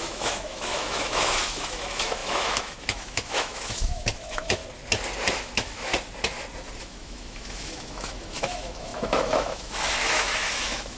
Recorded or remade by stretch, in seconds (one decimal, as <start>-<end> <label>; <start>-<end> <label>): 0.0-4.6 remade; 4.6-5.3 recorded; 5.3-5.9 remade; 5.9-6.8 recorded; 6.8-11.0 remade